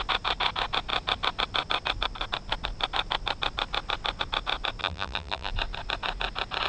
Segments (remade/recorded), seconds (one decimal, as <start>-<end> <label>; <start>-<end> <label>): 0.0-4.8 recorded; 4.8-5.5 remade; 5.5-6.7 recorded